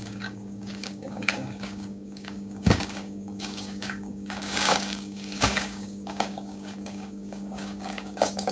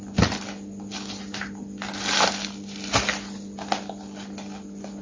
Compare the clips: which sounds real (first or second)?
second